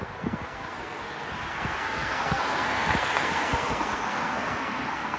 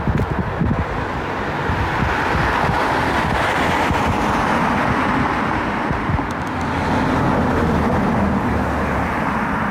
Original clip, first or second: second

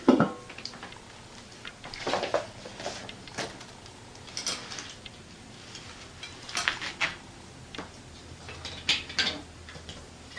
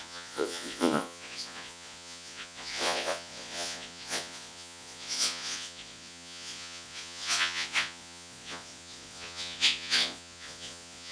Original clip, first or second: first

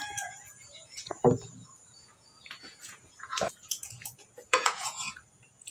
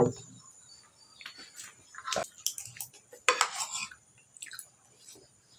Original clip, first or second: second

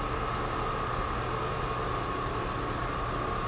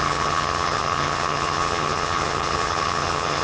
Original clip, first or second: first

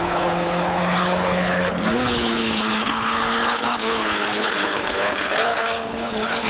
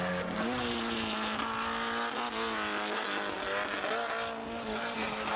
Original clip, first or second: second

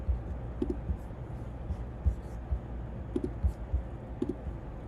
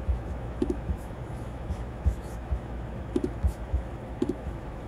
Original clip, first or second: first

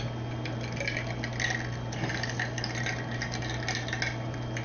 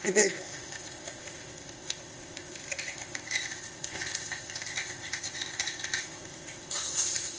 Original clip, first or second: first